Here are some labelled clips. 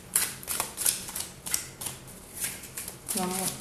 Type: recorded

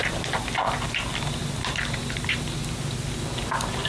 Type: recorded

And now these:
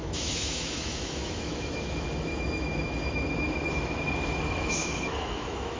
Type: remade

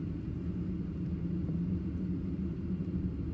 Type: recorded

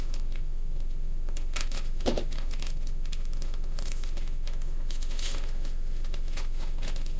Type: remade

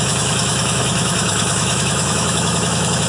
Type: remade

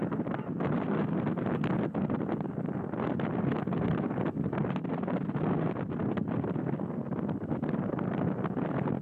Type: recorded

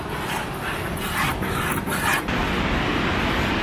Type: recorded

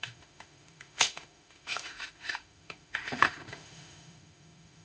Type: remade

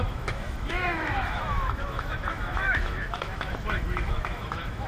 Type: remade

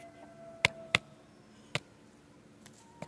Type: recorded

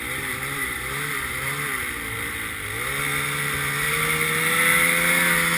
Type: recorded